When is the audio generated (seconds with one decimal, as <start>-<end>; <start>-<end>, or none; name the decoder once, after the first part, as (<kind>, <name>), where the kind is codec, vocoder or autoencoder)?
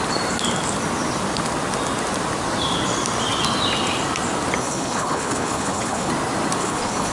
4.6-6.1 (codec, HILCodec); 6.6-7.1